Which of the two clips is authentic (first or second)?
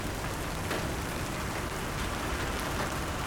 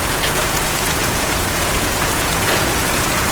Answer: first